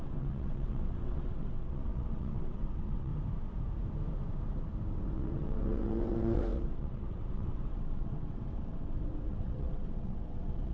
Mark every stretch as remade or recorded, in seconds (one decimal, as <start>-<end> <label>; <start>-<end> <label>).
0.0-3.1 remade; 3.1-4.9 recorded; 4.9-10.7 remade